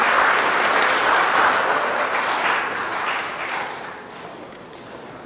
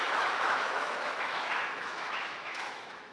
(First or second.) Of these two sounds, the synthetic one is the second